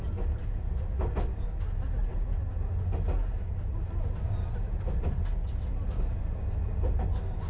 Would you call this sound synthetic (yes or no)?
no